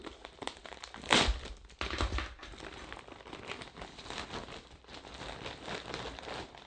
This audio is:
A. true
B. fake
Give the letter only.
A